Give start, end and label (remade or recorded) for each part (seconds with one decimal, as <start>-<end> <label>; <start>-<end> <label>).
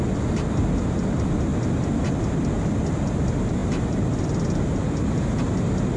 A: 0.0-6.0 recorded